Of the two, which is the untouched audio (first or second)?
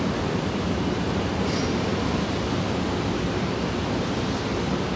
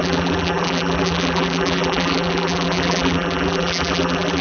first